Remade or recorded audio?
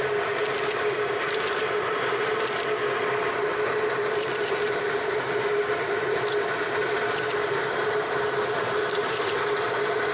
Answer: remade